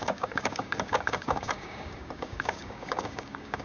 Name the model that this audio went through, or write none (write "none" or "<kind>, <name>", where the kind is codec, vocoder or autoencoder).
codec, DAC